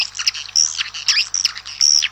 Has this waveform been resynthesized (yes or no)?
no